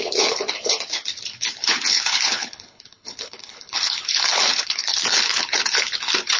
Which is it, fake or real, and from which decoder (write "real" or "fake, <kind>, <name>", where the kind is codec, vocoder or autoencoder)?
fake, codec, HILCodec